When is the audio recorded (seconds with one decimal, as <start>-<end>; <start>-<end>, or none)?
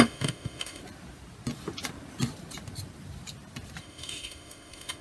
0.8-3.8